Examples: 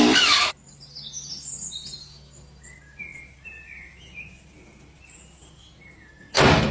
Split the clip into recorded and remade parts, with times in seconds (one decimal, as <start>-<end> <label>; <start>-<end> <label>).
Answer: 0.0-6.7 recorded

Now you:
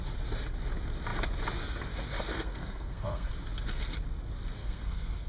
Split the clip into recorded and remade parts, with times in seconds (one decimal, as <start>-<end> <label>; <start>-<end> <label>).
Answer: 0.0-2.3 recorded; 2.3-3.3 remade; 3.3-4.6 recorded; 4.6-5.3 remade

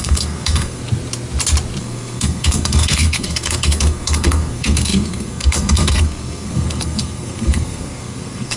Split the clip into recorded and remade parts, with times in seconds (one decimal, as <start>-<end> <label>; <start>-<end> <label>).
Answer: 0.0-0.8 remade; 0.8-1.8 recorded; 1.8-8.6 remade